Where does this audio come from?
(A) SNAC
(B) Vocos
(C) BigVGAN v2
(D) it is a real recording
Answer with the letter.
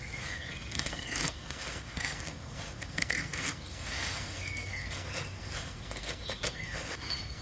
A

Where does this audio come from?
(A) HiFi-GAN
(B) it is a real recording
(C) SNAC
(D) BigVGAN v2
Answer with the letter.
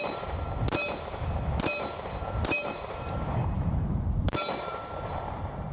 D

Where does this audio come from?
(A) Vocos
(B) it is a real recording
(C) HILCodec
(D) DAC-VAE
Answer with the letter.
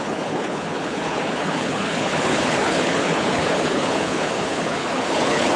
C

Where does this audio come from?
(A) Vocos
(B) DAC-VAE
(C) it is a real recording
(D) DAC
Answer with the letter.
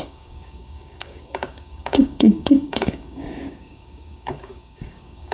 D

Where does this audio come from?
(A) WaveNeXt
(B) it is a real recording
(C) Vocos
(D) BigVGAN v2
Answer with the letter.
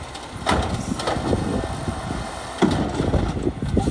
B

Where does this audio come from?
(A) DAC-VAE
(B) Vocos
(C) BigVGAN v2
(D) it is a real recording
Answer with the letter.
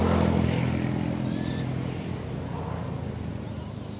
D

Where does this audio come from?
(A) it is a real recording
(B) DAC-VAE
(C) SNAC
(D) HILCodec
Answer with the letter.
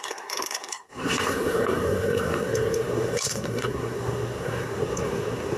C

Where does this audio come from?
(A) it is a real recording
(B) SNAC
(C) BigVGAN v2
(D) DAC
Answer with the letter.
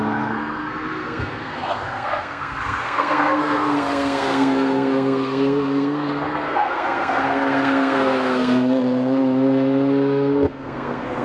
B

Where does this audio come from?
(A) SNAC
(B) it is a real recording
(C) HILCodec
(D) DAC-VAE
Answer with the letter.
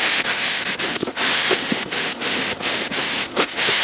D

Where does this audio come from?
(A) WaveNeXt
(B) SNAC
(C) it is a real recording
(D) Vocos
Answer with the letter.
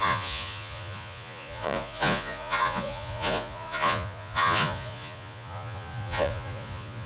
D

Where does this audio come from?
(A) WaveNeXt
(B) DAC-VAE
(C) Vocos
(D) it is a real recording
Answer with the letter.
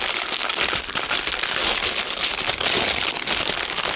D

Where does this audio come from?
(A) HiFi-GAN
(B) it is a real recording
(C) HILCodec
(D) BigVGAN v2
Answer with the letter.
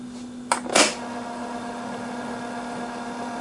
B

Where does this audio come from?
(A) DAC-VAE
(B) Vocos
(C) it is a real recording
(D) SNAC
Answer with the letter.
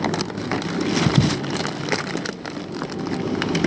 C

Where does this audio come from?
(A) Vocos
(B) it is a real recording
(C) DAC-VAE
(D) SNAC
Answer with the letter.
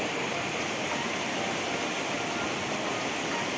B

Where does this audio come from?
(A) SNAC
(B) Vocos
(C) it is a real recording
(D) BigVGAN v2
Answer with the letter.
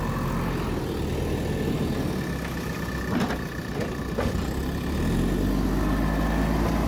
C